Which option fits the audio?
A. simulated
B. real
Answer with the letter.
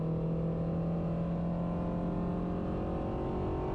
B